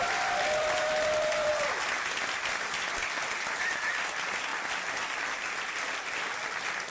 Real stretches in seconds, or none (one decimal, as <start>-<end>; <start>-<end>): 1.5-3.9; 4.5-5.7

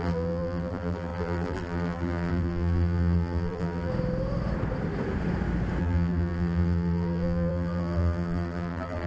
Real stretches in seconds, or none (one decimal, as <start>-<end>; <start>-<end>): 3.9-5.8

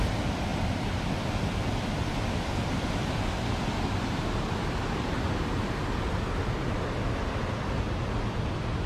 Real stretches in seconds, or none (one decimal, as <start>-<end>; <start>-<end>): 0.0-0.5; 1.3-8.9

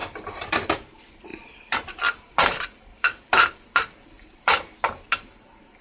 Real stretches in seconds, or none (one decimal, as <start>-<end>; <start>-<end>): 0.9-1.3; 4.8-5.8

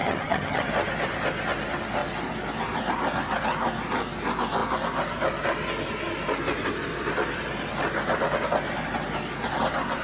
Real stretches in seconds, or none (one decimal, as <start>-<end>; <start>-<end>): 0.7-10.0

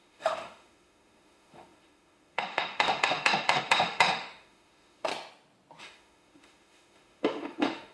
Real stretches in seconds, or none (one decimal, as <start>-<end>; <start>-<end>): 5.1-5.8

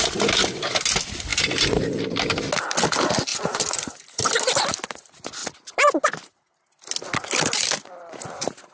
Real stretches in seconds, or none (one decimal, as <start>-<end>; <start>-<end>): 0.0-1.3; 2.0-8.7